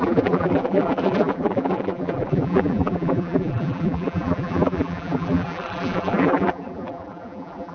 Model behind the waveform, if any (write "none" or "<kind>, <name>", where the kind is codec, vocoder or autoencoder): vocoder, BigVGAN v2